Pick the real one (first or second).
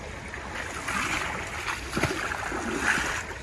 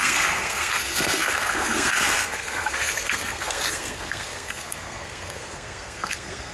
first